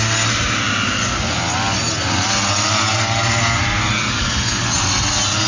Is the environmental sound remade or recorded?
recorded